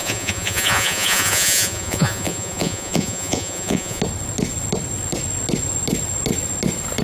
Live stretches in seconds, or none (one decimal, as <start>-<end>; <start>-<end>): 4.0-7.0